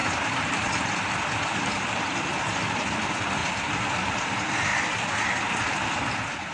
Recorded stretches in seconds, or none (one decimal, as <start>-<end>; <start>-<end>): 0.0-6.5